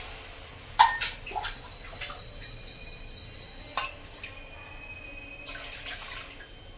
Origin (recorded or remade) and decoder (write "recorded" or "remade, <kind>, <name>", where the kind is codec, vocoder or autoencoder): recorded